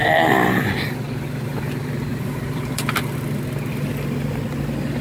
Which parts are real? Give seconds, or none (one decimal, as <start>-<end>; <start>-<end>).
0.0-2.1; 2.8-5.0